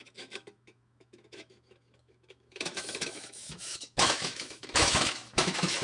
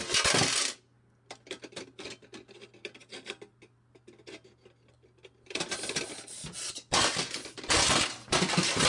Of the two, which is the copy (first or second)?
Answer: first